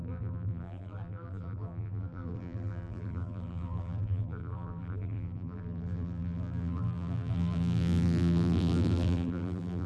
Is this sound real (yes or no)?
no